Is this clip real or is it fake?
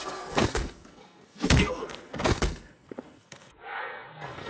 fake